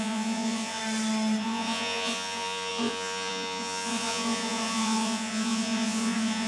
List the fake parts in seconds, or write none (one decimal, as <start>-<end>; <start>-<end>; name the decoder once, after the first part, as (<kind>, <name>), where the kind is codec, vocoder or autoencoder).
0.0-0.8 (vocoder, Vocos); 1.4-6.5